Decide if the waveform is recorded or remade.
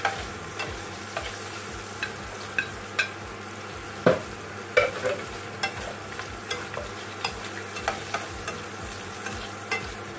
recorded